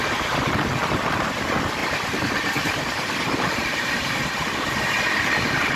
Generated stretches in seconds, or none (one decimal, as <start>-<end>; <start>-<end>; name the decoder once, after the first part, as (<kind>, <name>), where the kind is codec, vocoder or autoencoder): 1.8-4.8 (vocoder, BigVGAN v2)